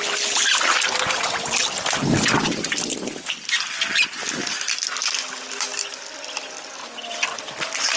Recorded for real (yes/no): yes